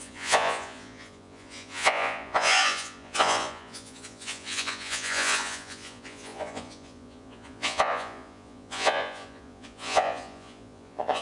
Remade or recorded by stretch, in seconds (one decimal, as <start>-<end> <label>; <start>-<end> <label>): 0.0-11.2 remade